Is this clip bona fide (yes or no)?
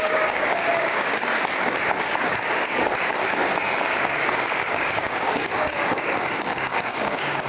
no